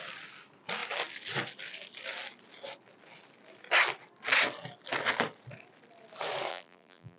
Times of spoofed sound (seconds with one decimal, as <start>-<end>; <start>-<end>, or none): 6.5-7.2